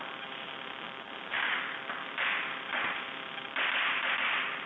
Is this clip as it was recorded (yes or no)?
no